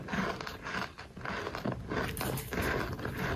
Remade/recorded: recorded